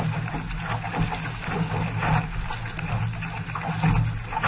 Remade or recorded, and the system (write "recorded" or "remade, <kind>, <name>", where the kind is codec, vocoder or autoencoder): recorded